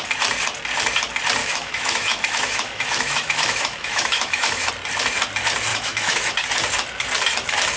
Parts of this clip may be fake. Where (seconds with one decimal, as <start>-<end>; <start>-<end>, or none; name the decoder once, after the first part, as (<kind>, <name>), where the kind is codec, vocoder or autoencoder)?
1.4-4.7 (autoencoder, DAC-VAE); 5.7-6.3